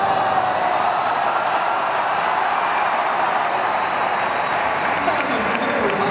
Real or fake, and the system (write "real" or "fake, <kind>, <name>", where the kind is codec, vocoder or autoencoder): real